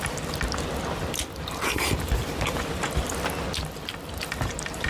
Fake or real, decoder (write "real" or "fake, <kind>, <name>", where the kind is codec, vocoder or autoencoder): real